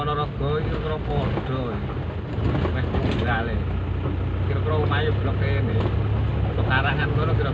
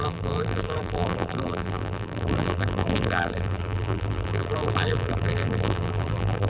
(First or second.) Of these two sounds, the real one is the first